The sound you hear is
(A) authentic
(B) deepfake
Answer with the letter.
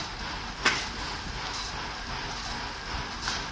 A